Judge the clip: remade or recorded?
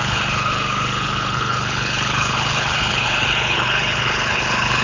remade